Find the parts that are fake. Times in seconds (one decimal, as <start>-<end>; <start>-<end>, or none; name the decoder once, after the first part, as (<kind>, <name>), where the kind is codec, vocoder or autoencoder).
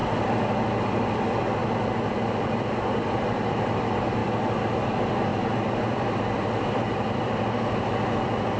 0.8-1.6 (vocoder, BigVGAN v2); 2.3-4.2; 4.7-8.6